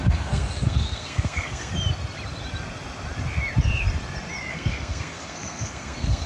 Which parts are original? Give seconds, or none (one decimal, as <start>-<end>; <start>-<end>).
1.7-4.5